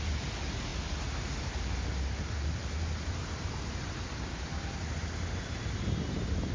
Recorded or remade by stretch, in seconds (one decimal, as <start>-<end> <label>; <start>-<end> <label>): 0.0-6.5 recorded